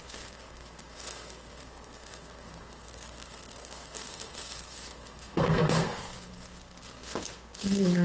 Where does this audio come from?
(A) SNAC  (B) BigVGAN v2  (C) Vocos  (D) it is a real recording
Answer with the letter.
A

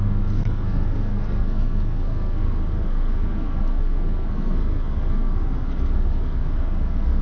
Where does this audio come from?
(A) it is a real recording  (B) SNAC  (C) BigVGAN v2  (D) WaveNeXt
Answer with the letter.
B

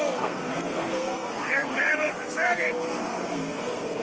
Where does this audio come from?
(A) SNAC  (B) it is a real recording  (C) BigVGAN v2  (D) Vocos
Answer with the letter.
A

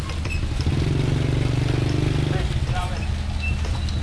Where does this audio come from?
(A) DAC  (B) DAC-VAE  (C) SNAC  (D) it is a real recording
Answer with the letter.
D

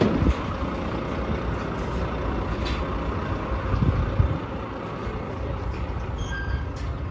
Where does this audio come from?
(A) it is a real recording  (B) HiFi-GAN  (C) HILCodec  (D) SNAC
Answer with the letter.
A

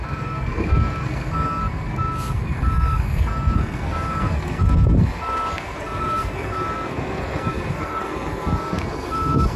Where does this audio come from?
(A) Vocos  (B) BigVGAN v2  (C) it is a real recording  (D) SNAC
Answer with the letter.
D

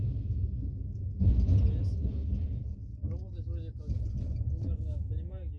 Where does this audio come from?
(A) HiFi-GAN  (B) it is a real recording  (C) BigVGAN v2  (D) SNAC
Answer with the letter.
B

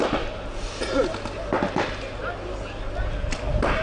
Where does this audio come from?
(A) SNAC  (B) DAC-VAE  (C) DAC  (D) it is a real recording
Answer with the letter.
D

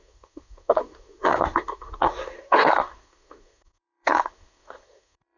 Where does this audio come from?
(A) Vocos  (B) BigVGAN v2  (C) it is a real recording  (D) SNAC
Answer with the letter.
D